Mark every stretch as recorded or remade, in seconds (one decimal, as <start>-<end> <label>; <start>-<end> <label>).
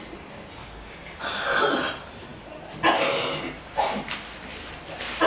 0.0-0.6 recorded; 0.6-1.2 remade; 1.2-5.3 recorded